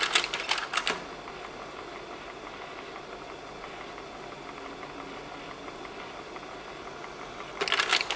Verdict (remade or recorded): recorded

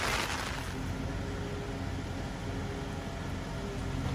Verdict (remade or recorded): recorded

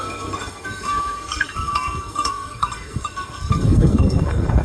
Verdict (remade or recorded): remade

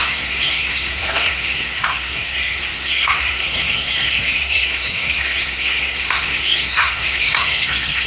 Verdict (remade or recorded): remade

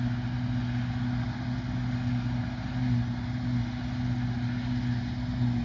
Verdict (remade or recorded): recorded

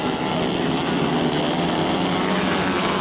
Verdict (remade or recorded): recorded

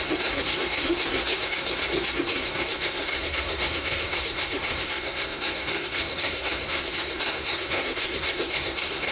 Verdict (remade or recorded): remade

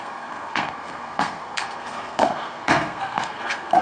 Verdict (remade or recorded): remade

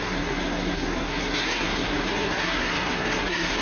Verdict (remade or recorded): remade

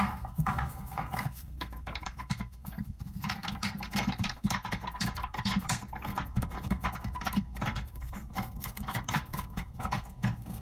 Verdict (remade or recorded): remade